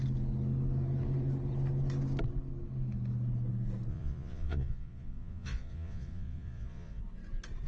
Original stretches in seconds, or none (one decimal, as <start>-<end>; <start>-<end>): 0.0-3.9; 7.0-7.7